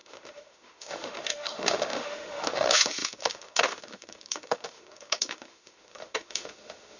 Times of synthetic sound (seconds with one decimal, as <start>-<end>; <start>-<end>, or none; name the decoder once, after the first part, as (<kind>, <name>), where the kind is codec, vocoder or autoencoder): 0.0-7.0 (autoencoder, DAC-VAE)